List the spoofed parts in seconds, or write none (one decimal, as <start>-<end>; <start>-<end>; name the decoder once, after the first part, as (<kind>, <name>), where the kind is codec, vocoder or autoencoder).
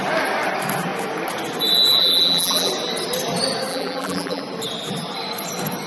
2.0-2.7 (vocoder, BigVGAN v2); 3.7-4.4